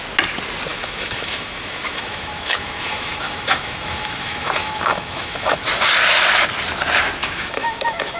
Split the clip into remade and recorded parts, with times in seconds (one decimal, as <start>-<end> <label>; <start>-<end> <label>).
0.0-0.7 recorded; 0.7-5.6 remade; 5.6-7.2 recorded; 7.2-8.2 remade